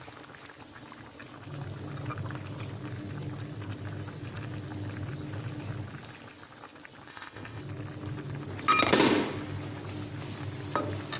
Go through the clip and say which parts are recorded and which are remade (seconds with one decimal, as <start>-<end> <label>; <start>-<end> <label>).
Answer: 0.0-7.1 recorded; 7.1-7.6 remade; 7.6-11.2 recorded